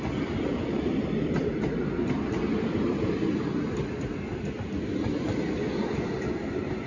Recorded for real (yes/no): yes